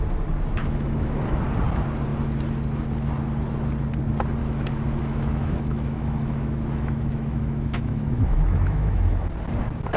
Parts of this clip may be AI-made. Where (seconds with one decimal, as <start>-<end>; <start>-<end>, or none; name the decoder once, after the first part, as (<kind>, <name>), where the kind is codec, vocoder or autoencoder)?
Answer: 0.6-1.4 (autoencoder, DAC-VAE); 4.4-9.3

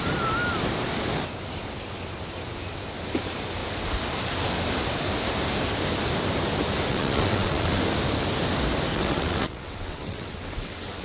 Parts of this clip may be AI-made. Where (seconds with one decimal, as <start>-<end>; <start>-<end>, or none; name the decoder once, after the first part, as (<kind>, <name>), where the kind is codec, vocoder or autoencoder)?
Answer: 6.9-7.8 (vocoder, WaveNeXt); 8.9-11.0

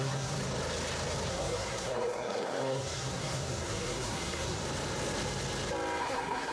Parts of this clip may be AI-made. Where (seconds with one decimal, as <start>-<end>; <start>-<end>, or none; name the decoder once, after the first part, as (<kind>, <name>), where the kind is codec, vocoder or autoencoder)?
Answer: 0.0-0.4 (codec, SNAC); 1.3-4.6; 6.0-6.5

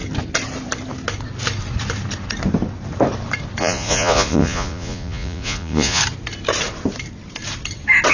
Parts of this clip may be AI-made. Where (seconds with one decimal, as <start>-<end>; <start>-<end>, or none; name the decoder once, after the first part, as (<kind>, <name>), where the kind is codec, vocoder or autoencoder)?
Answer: 3.6-6.0 (vocoder, Vocos)

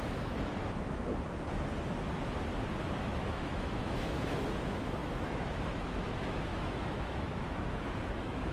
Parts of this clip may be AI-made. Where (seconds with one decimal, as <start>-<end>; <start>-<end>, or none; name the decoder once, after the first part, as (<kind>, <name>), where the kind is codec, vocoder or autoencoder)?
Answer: 0.0-0.6 (autoencoder, DAC-VAE); 3.0-8.5

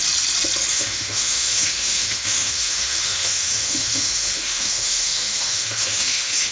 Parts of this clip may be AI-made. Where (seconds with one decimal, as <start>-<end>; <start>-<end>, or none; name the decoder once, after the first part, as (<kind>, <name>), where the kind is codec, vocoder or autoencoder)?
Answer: 0.7-6.5 (autoencoder, DAC-VAE)

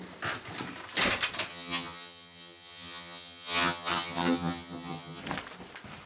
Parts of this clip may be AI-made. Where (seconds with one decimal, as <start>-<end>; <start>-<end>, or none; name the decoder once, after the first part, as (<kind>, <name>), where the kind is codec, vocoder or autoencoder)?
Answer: 1.5-5.2 (vocoder, HiFi-GAN)

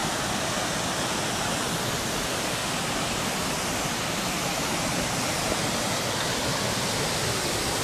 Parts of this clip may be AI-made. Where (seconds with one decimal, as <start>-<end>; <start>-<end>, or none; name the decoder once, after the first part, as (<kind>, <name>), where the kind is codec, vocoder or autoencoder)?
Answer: 0.0-1.4 (vocoder, BigVGAN v2); 2.6-3.9